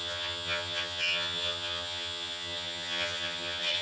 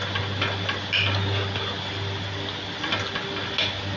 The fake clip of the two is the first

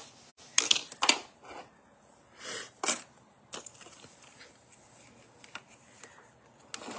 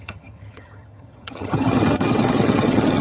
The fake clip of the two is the second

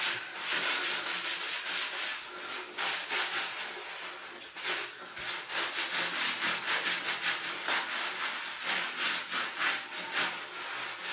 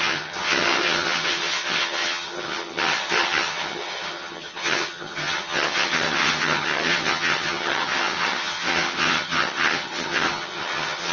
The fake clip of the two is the second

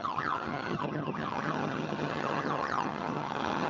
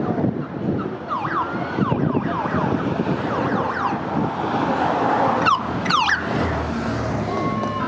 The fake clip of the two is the first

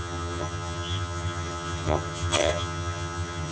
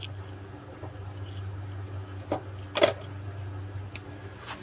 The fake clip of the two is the first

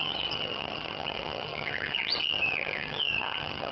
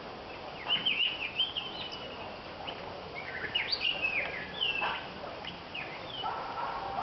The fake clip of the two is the first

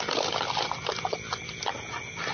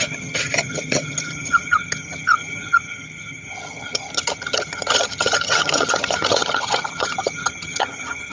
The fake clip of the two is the second